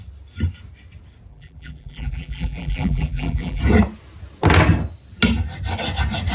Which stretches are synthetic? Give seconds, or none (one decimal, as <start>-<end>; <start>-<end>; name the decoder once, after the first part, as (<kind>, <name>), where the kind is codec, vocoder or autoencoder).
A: 1.3-3.6 (vocoder, BigVGAN v2)